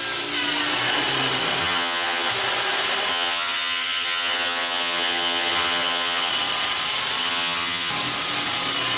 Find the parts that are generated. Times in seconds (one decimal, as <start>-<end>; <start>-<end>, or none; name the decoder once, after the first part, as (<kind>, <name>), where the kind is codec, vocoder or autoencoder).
1.6-2.3 (vocoder, HiFi-GAN); 3.1-6.3; 7.2-7.9